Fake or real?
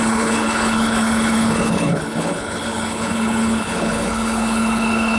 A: fake